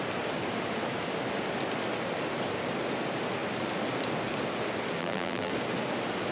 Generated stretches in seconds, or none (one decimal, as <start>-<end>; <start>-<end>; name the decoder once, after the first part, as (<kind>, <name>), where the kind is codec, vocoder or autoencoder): 5.0-5.5 (vocoder, BigVGAN v2)